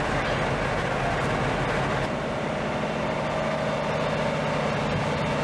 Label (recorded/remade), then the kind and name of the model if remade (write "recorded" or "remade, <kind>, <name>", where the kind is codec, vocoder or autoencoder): recorded